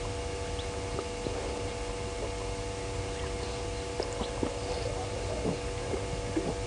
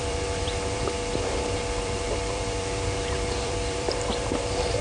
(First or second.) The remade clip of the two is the second